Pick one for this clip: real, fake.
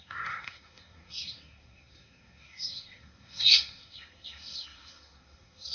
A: fake